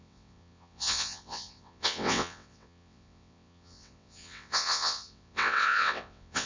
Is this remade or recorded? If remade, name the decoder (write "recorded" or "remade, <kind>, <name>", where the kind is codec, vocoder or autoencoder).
remade, vocoder, WaveNeXt